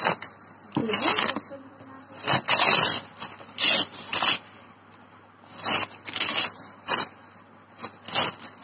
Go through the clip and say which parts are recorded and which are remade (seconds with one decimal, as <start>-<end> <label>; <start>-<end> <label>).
0.0-8.6 recorded

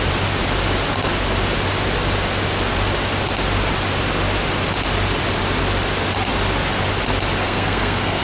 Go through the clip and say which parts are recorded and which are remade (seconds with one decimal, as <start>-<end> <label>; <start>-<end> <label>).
0.0-7.4 recorded; 7.4-8.2 remade

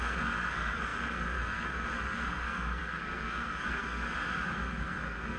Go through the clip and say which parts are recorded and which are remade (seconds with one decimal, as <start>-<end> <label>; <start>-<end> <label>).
0.0-5.4 remade

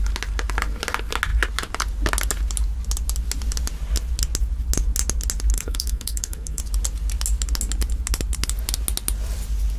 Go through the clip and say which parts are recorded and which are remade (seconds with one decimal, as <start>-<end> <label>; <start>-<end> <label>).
0.0-5.5 recorded; 5.5-6.6 remade; 6.6-9.8 recorded